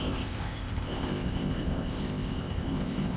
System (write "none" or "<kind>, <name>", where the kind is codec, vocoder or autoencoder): codec, ZipCodec